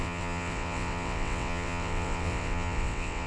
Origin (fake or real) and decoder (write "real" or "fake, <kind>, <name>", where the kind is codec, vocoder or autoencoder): fake, vocoder, WaveNeXt